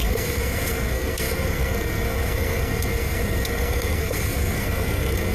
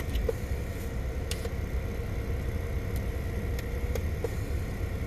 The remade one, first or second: first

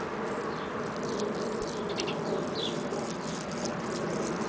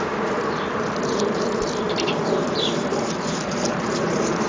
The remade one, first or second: second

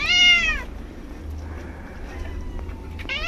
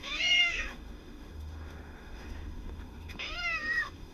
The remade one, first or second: second